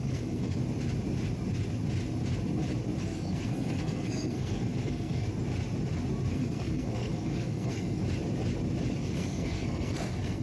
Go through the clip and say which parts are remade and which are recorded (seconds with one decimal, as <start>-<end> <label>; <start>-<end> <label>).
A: 0.0-0.6 remade; 0.6-3.0 recorded; 3.0-5.3 remade; 5.3-6.3 recorded; 6.3-8.0 remade; 8.0-9.0 recorded; 9.0-10.4 remade